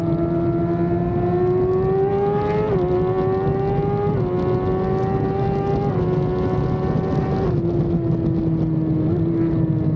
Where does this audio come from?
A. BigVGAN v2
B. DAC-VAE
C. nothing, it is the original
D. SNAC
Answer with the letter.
C